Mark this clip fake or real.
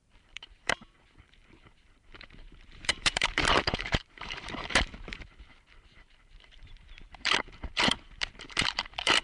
fake